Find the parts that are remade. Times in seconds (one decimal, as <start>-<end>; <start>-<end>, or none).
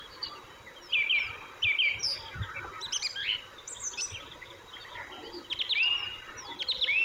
none